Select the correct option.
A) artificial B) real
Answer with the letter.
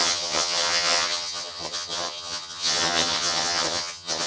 A